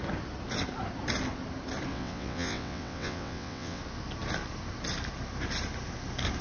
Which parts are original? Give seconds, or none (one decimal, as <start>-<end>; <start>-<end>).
0.0-1.9; 3.8-6.4